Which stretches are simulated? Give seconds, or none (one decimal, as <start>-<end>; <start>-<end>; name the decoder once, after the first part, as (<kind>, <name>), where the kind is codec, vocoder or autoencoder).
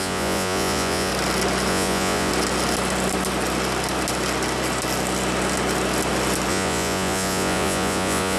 0.0-1.1 (vocoder, Vocos); 1.7-2.3; 6.5-8.4